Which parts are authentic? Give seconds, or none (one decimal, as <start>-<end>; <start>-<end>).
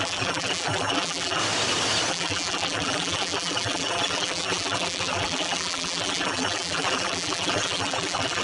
1.4-2.1